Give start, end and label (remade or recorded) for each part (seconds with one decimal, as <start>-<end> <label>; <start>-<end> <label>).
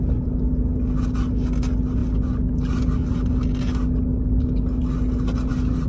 0.0-5.9 recorded